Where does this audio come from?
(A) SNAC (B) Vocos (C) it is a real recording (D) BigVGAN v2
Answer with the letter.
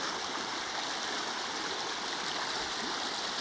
C